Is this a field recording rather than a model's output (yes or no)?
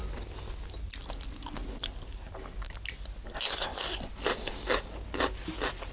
yes